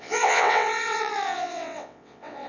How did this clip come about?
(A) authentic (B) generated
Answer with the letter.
B